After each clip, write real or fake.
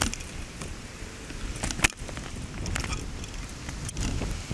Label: real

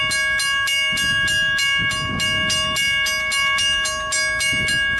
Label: real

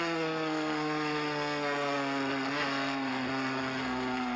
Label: fake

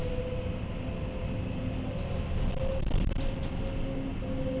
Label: real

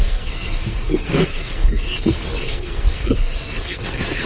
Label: fake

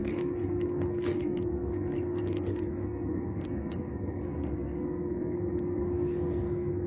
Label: fake